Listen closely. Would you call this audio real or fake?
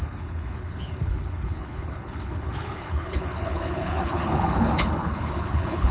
fake